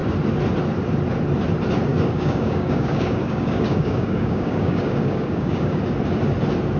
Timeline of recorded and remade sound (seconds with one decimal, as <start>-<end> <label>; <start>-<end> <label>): 0.0-1.9 recorded; 1.9-5.8 remade; 5.8-6.8 recorded